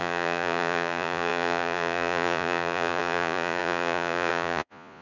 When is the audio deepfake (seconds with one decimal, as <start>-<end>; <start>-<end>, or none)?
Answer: 0.0-5.0